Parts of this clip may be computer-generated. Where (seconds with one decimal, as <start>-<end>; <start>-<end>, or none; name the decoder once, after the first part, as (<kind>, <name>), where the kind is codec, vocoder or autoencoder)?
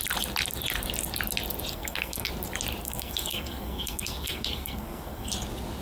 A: 1.7-2.3 (codec, SNAC); 2.8-5.3